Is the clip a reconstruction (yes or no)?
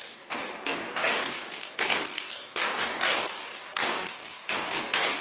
yes